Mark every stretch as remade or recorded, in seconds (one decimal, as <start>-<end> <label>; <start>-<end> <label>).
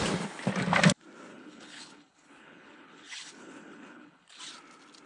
0.0-1.3 recorded; 1.3-4.4 remade; 4.4-5.1 recorded